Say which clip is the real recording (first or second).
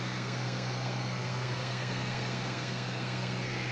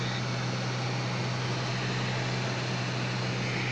second